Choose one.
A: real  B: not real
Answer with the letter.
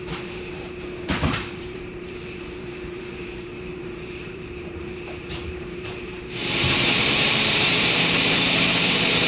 B